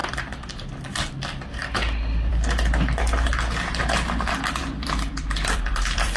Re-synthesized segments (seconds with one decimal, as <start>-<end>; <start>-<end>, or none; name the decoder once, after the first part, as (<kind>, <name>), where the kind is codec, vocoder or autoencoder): 1.6-2.3 (vocoder, BigVGAN v2); 4.6-6.2